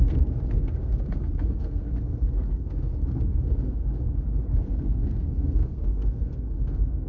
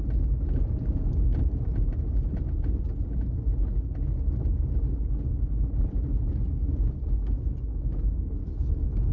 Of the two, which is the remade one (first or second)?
first